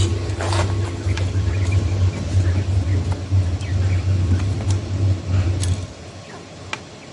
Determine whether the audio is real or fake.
real